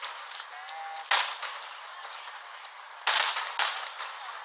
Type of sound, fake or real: real